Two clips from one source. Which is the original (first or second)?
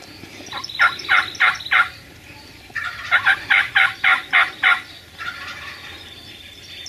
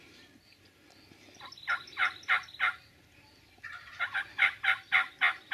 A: second